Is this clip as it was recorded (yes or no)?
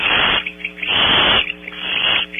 yes